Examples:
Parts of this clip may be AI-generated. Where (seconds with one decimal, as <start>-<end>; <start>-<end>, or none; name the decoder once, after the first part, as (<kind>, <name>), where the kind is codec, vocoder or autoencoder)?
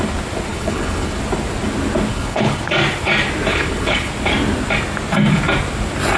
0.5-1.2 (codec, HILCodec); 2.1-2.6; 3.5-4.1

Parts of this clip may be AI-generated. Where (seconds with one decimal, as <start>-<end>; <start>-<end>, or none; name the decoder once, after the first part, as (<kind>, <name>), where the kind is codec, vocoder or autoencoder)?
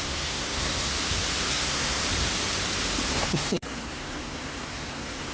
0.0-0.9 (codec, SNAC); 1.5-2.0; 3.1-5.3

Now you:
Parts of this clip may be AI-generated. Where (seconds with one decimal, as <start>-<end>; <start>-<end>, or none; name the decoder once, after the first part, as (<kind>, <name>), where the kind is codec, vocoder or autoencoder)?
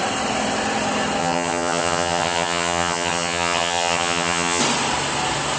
1.2-4.6 (vocoder, HiFi-GAN)